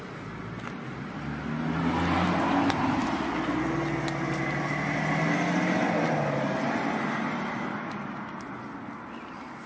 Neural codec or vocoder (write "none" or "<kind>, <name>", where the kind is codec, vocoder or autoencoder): none